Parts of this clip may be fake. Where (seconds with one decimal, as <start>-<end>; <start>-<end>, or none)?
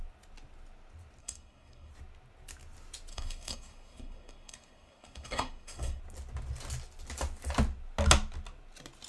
1.2-1.9; 3.1-6.0